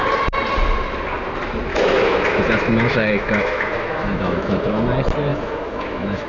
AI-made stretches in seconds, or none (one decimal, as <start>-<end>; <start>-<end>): 1.7-4.8; 5.3-6.3